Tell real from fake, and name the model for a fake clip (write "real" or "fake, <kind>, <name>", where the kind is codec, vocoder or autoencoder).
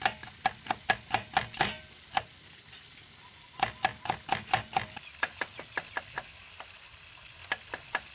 real